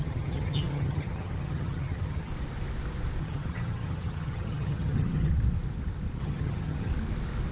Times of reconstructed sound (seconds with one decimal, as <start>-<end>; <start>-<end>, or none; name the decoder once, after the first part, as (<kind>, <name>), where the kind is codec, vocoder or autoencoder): 0.0-2.3 (vocoder, HiFi-GAN); 3.2-5.3; 6.2-6.9